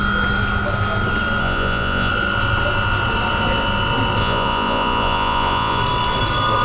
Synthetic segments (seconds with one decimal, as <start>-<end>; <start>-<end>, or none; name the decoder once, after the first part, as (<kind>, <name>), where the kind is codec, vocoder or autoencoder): 1.4-2.1 (vocoder, Vocos); 4.2-5.8